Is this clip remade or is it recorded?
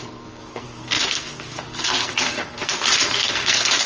remade